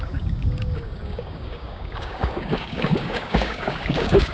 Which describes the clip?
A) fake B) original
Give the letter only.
A